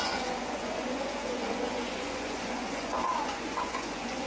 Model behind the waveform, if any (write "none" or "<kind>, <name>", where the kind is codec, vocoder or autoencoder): vocoder, Vocos